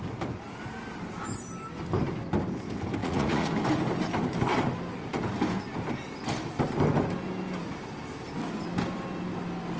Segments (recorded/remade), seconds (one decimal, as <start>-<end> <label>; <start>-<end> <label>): 0.0-3.0 recorded; 3.0-3.5 remade; 3.5-9.8 recorded